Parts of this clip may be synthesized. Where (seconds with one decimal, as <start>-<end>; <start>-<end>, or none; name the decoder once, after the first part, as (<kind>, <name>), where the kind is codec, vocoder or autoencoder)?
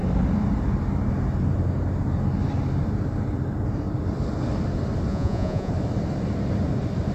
5.1-5.7 (vocoder, Vocos)